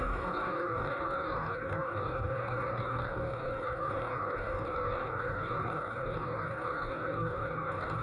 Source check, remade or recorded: remade